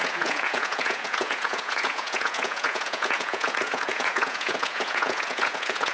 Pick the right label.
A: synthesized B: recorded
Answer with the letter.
A